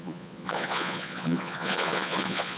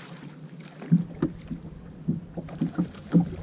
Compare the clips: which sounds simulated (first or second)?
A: first